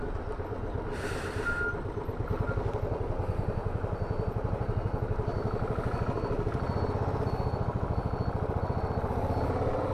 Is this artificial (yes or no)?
no